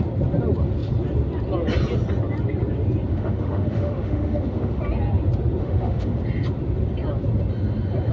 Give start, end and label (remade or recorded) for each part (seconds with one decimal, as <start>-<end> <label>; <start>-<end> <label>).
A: 0.0-3.1 recorded; 3.1-4.8 remade; 4.8-5.6 recorded; 5.6-6.2 remade; 6.2-8.1 recorded